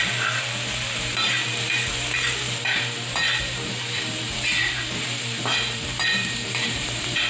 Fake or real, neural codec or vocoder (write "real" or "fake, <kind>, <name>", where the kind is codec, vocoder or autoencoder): fake, vocoder, BigVGAN v2